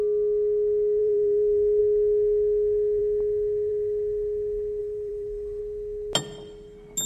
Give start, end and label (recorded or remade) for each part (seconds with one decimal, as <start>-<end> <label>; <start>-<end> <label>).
0.0-1.0 recorded; 1.0-1.8 remade; 1.8-4.8 recorded; 4.8-5.6 remade; 5.6-7.1 recorded